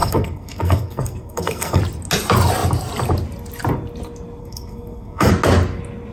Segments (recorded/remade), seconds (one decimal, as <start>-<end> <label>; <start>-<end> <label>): 0.0-1.8 remade; 1.8-4.4 recorded; 4.4-5.3 remade; 5.3-6.1 recorded